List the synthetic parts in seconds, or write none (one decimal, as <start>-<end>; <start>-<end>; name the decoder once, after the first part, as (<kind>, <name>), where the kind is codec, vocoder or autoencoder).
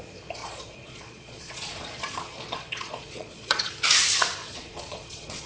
0.4-3.7 (vocoder, Vocos); 4.4-5.5